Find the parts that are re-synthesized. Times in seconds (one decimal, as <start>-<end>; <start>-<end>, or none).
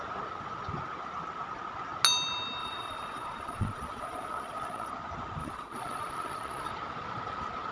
2.6-4.9; 5.4-6.7